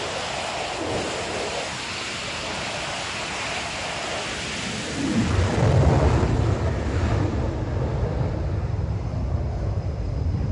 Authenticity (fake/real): real